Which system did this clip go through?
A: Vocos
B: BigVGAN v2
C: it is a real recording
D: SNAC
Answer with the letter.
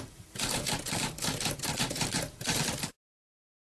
B